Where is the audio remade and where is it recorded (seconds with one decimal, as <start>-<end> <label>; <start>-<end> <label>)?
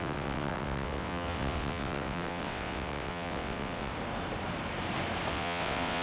0.0-3.9 remade; 3.9-5.3 recorded; 5.3-6.0 remade